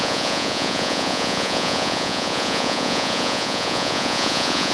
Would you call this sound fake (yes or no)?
yes